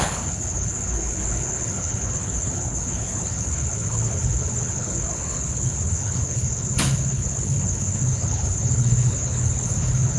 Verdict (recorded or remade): remade